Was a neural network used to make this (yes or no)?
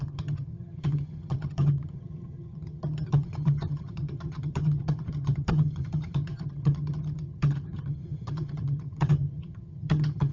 yes